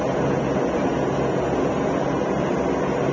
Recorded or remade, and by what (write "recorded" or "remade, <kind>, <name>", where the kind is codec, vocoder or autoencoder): recorded